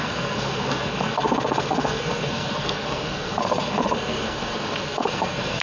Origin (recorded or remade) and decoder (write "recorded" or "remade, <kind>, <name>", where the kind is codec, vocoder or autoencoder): remade, codec, SNAC